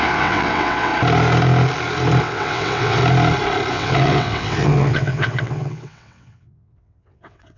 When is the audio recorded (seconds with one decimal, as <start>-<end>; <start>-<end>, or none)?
0.9-2.2; 3.0-3.7